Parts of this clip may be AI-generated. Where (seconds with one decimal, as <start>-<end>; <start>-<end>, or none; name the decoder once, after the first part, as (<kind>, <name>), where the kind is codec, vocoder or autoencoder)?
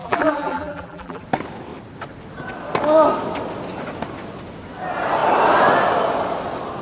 0.0-1.2 (vocoder, BigVGAN v2)